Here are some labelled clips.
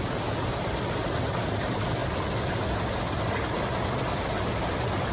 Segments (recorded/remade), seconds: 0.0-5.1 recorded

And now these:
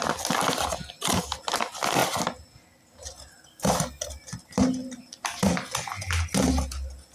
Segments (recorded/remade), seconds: 0.0-7.1 recorded

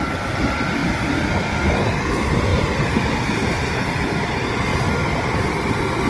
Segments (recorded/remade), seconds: 0.0-0.8 recorded; 0.8-1.8 remade; 1.8-2.5 recorded; 2.5-3.0 remade; 3.0-6.1 recorded

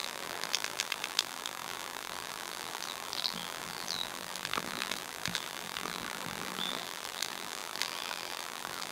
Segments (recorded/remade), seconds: 0.0-8.9 remade

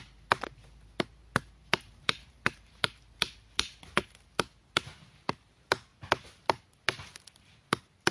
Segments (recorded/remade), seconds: 0.0-1.6 recorded; 1.6-3.3 remade; 3.3-8.1 recorded

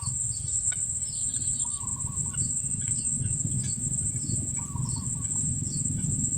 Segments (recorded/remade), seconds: 0.0-6.4 recorded

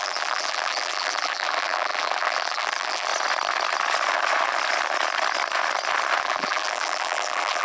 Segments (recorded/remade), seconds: 0.0-3.1 remade; 3.1-6.2 recorded; 6.2-7.6 remade